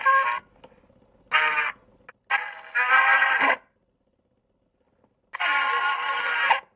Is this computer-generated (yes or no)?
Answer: no